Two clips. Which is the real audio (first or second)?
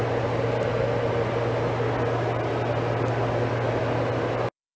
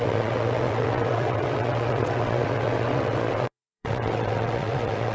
first